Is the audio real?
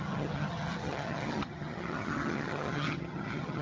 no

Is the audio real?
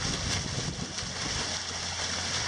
yes